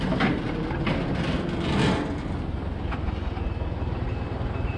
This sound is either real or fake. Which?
real